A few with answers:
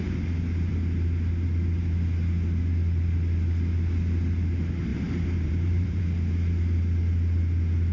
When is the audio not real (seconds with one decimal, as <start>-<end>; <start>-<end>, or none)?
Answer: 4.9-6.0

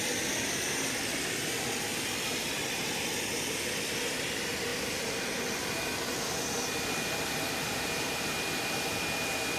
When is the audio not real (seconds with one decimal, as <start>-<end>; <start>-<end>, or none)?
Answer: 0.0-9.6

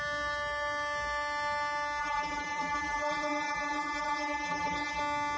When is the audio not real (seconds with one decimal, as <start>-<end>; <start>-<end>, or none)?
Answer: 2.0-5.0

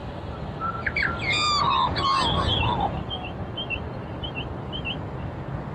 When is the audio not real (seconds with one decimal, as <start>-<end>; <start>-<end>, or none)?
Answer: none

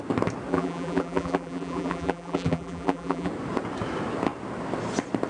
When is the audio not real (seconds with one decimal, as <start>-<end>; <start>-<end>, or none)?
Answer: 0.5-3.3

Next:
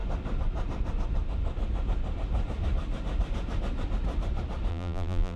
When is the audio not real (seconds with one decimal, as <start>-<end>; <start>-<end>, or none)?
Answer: 4.7-5.4